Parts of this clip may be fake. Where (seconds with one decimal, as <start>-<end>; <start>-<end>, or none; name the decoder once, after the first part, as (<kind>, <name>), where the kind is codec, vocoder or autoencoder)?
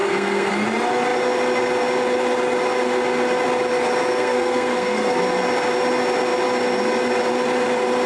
0.0-0.5 (codec, SNAC); 4.1-5.2